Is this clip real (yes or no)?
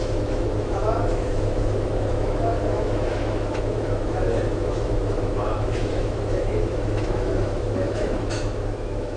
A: no